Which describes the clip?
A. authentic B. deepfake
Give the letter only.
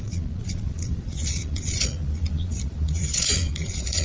B